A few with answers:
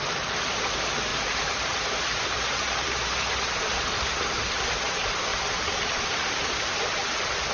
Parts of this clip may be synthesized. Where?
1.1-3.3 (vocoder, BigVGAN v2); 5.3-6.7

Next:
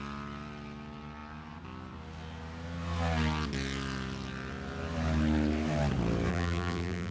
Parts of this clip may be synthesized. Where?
6.3-7.1 (vocoder, BigVGAN v2)

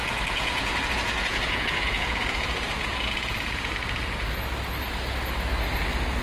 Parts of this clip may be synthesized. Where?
0.0-3.7 (vocoder, Vocos)

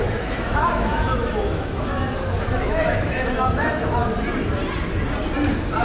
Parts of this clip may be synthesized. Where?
0.0-4.0 (autoencoder, DAC-VAE)

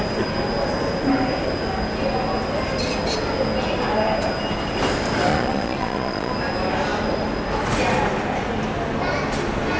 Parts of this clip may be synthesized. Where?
5.3-6.3 (vocoder, Vocos)